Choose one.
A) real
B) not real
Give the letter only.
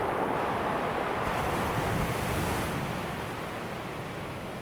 A